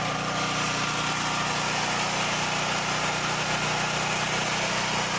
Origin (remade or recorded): recorded